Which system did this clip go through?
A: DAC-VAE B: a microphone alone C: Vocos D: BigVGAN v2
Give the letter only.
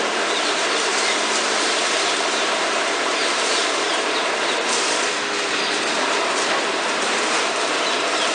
D